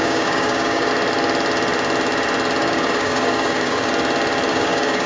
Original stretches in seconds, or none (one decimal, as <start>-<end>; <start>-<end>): 0.9-2.6; 3.9-4.5